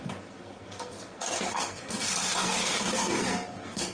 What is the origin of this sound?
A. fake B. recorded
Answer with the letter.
A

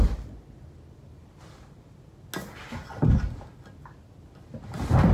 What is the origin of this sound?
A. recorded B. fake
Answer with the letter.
A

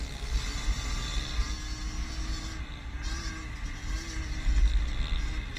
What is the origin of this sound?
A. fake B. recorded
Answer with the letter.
B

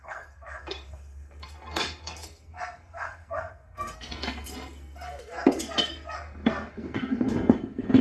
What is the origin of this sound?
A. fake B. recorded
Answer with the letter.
A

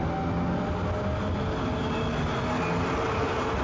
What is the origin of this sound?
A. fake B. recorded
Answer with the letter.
B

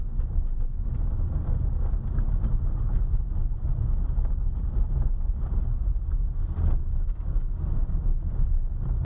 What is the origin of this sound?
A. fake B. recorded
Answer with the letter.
B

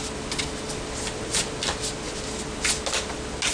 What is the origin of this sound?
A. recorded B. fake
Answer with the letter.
A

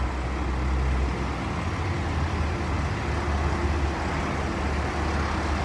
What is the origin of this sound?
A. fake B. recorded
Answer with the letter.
B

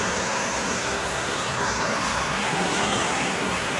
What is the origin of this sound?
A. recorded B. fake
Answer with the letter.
B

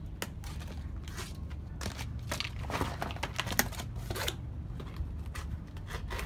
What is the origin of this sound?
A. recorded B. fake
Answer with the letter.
A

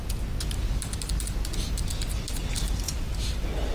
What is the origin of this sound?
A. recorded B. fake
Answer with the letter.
A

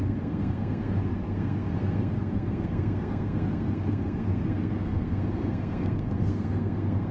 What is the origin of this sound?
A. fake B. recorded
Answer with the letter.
A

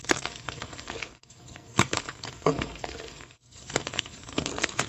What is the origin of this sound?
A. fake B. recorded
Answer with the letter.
A